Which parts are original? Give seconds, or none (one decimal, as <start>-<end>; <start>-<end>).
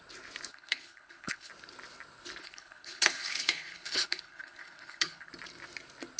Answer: 0.0-0.5; 1.5-2.4; 5.3-6.2